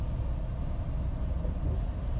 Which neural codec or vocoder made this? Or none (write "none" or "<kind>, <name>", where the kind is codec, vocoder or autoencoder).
none